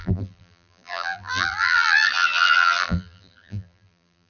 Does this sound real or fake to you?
fake